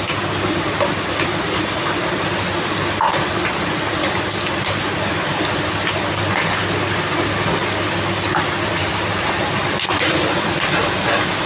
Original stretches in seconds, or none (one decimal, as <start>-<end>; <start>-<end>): 0.0-11.5